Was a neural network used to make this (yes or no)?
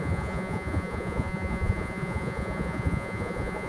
yes